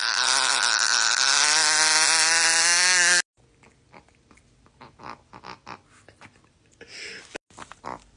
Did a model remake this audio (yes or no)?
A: no